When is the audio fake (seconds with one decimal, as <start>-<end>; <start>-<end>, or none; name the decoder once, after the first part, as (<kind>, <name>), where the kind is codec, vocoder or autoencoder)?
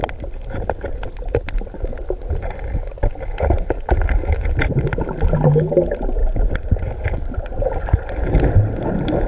none